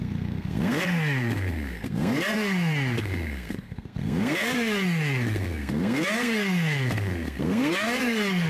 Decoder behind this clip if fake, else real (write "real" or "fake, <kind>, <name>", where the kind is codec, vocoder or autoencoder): fake, codec, SNAC